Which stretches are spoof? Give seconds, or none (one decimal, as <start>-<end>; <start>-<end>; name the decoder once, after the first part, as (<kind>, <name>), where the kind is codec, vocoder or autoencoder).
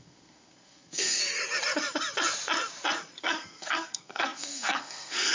0.0-1.2 (codec, SNAC); 3.2-5.3